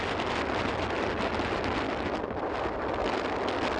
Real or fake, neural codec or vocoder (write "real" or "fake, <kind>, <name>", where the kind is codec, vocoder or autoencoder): real